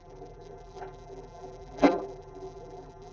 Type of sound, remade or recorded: remade